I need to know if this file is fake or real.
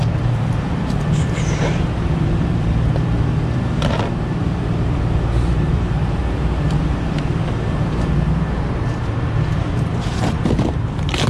fake